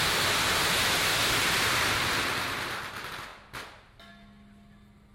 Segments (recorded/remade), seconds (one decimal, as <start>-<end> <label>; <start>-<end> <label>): 0.0-1.4 recorded; 1.4-2.1 remade; 2.1-5.1 recorded

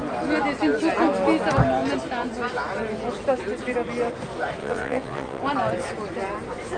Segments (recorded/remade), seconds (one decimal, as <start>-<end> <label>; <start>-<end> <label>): 0.0-4.6 recorded; 4.6-5.4 remade; 5.4-6.8 recorded

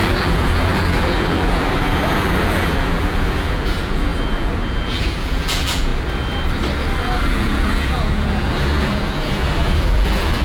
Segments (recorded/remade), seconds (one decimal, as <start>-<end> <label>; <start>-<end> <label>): 0.0-5.9 remade; 5.9-7.0 recorded; 7.0-10.4 remade

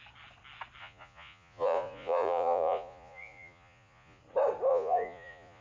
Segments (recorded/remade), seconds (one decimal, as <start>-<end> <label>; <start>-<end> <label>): 0.0-0.8 recorded; 0.8-4.2 remade; 4.2-4.7 recorded; 4.7-5.6 remade

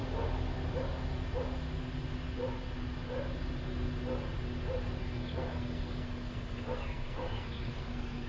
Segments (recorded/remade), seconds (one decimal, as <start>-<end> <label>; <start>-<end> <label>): 0.0-5.0 recorded; 5.0-8.3 remade

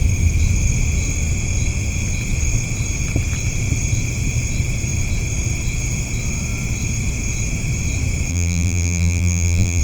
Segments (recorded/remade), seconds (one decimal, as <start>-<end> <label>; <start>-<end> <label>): 0.0-8.3 recorded; 8.3-9.8 remade

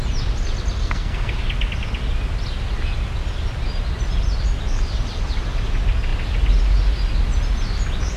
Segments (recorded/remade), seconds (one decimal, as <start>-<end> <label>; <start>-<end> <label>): 0.0-0.8 recorded; 0.8-1.4 remade; 1.4-8.2 recorded